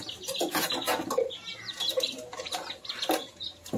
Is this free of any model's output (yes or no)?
yes